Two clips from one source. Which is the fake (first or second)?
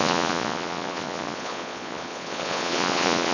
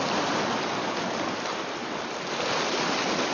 first